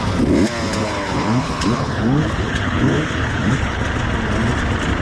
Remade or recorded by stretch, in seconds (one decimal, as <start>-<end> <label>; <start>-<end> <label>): 0.0-0.8 recorded; 0.8-3.8 remade; 3.8-5.0 recorded